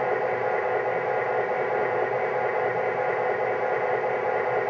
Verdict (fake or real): real